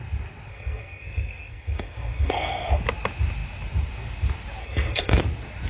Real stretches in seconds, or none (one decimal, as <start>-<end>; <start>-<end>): 0.0-0.5; 2.8-4.6; 5.2-5.7